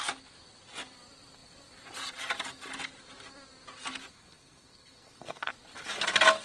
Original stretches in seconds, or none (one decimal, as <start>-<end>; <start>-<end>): 0.0-4.1; 5.5-6.4

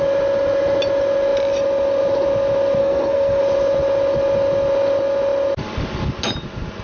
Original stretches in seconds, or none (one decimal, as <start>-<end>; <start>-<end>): 0.0-2.8; 3.4-6.8

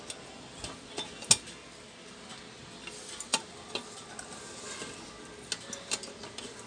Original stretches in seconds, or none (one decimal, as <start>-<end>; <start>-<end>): 0.0-6.7

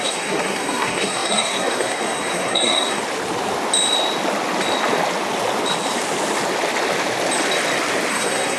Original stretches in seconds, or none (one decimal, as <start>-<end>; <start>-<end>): 3.0-8.1

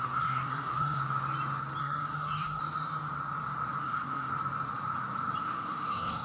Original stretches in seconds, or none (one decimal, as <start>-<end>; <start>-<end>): 1.0-1.8; 2.6-3.8; 4.3-5.4

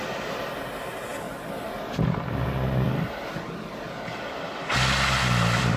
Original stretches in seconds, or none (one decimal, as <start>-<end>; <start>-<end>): 0.0-5.8

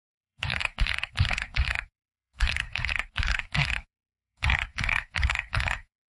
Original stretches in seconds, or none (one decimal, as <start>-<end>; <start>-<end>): none

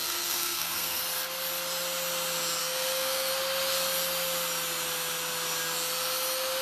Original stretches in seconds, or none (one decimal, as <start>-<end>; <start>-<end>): 1.0-2.6; 3.3-6.6